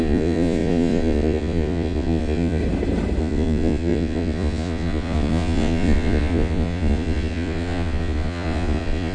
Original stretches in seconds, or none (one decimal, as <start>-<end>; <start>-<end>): 2.6-3.2